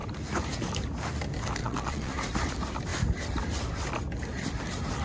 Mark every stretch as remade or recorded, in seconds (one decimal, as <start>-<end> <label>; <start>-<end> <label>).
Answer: 0.0-1.6 recorded; 1.6-2.1 remade; 2.1-5.0 recorded